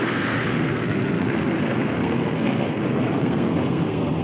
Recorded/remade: remade